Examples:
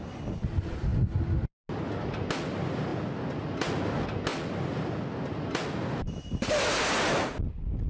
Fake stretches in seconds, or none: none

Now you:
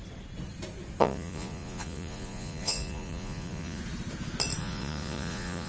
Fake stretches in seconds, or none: 1.0-3.8; 4.6-5.7

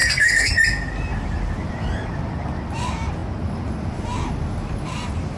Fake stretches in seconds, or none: 0.0-0.5

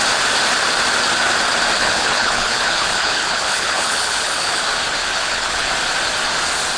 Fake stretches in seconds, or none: 1.8-4.6; 5.0-5.7

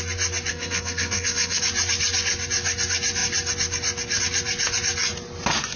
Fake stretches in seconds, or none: 0.5-1.6

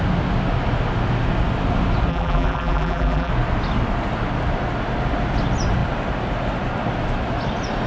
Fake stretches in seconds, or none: 2.1-3.3

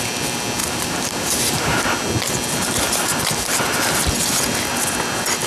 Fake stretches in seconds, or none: 0.6-1.8